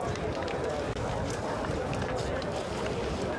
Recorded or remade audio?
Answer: recorded